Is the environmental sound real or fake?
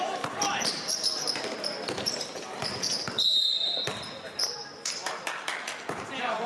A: fake